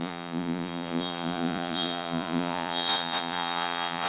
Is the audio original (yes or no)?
no